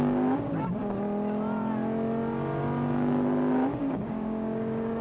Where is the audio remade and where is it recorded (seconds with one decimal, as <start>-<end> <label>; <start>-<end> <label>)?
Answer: 0.0-0.8 remade; 0.8-3.8 recorded; 3.8-5.0 remade